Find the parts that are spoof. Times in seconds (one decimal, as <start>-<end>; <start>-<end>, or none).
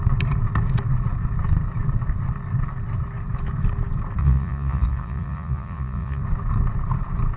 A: 4.2-6.2